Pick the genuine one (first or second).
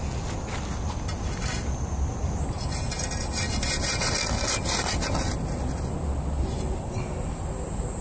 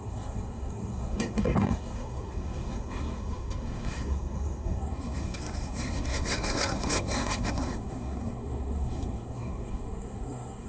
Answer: first